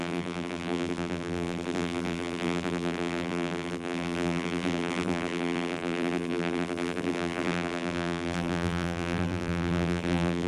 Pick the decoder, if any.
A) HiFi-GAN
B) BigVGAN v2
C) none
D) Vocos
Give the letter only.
B